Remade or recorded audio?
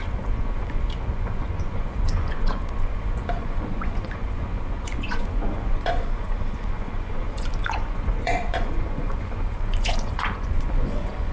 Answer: remade